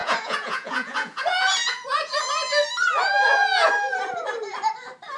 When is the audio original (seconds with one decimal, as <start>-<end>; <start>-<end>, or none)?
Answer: 2.3-3.2; 3.7-5.2